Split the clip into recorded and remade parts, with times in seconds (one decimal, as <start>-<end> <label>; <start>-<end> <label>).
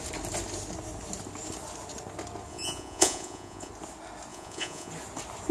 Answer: 0.0-2.5 recorded; 2.5-3.7 remade; 3.7-4.3 recorded; 4.3-4.9 remade; 4.9-5.5 recorded